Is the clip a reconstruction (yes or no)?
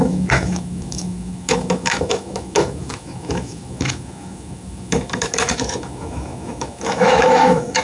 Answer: yes